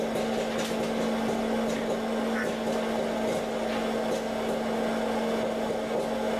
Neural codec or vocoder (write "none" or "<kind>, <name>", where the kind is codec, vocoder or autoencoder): none